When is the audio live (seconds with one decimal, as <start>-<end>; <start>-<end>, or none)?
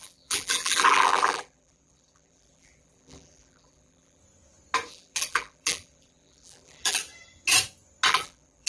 4.2-4.9; 7.0-8.1